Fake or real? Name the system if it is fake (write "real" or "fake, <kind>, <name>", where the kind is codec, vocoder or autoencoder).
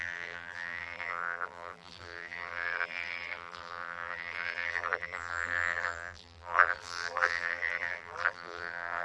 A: fake, vocoder, BigVGAN v2